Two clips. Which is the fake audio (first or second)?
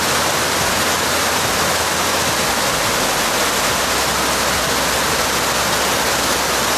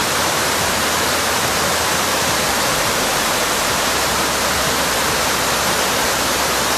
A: second